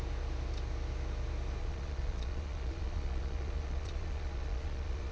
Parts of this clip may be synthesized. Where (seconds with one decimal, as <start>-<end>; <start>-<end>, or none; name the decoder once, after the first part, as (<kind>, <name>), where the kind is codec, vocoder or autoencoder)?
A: 1.6-5.1 (vocoder, Vocos)